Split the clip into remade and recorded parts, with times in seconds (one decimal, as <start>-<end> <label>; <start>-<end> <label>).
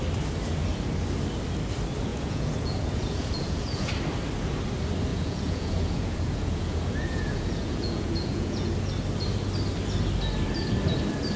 0.0-2.1 recorded; 2.1-3.9 remade; 3.9-5.1 recorded; 5.1-8.7 remade; 8.7-11.4 recorded